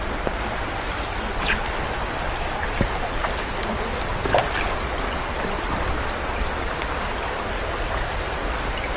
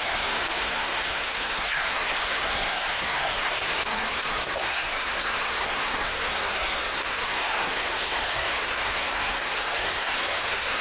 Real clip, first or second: first